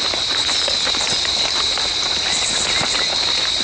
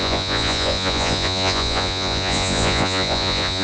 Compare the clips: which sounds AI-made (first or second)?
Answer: second